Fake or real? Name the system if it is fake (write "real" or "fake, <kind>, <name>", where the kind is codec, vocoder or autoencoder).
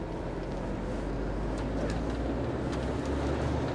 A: real